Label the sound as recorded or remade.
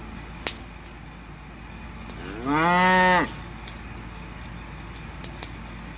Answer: recorded